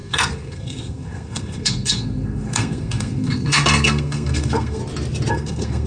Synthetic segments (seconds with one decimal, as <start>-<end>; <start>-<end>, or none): 0.0-4.8; 5.3-5.9